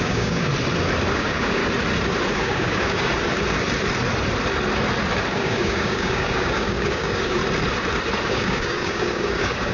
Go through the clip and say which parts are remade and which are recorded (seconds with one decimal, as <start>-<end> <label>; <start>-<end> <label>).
0.0-0.5 remade; 0.5-1.1 recorded; 1.1-1.6 remade; 1.6-2.3 recorded; 2.3-3.1 remade; 3.1-5.3 recorded; 5.3-7.4 remade; 7.4-8.3 recorded; 8.3-9.7 remade